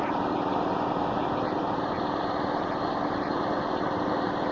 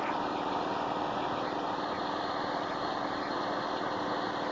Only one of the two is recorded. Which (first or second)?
second